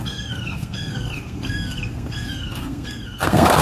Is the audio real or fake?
fake